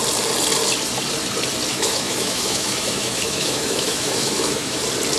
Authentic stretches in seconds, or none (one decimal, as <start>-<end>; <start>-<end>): 0.0-1.7; 4.8-5.2